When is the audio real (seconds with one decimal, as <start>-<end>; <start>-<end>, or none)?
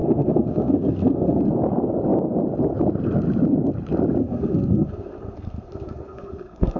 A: 1.4-4.2